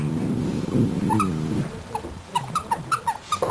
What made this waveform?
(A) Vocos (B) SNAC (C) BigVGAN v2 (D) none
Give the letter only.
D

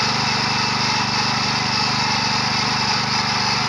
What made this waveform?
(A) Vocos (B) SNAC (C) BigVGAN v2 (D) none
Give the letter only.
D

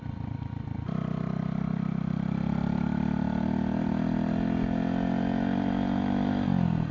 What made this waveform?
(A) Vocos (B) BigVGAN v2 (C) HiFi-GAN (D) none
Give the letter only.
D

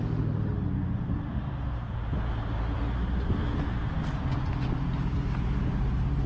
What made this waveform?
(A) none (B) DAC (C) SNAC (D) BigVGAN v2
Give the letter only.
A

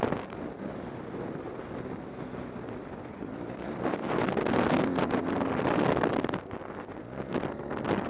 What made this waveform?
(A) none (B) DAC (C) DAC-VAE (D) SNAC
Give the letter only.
A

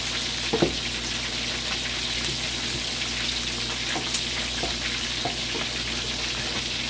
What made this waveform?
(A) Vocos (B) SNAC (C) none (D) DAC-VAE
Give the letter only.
C